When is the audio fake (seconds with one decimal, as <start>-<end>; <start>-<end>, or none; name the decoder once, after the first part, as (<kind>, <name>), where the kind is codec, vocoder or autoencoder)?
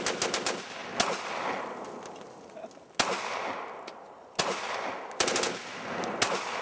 none